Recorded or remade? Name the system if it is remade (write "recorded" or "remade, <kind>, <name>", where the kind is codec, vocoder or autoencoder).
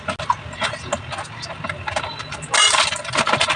recorded